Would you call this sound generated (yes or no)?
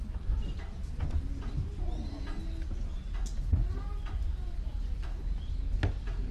no